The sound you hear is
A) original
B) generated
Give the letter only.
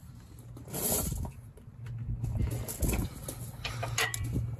A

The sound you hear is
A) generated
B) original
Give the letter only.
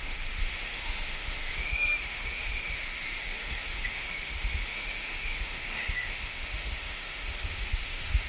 A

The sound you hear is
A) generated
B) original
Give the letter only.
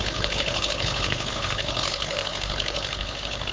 A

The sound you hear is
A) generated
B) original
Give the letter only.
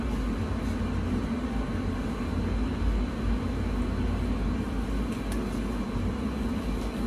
B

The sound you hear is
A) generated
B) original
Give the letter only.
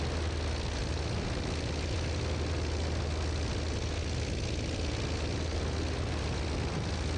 B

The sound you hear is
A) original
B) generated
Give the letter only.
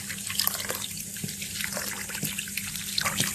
A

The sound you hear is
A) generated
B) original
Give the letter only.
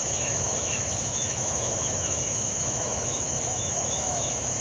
A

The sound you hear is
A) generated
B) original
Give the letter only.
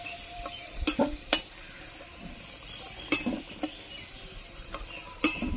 A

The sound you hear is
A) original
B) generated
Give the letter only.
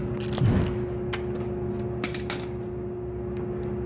A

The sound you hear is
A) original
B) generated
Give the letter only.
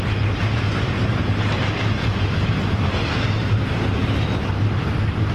B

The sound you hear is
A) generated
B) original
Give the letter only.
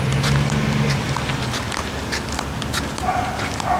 B